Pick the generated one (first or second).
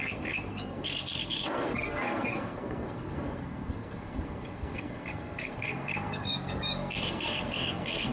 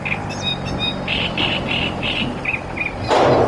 first